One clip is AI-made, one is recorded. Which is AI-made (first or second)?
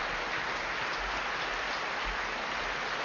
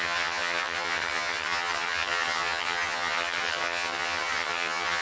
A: second